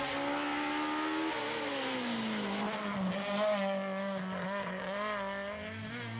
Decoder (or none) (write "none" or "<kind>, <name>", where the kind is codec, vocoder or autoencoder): none